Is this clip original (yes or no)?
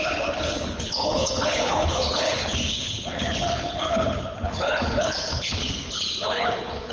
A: no